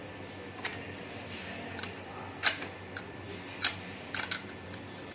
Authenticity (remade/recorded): recorded